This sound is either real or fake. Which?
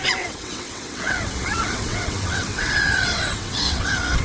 fake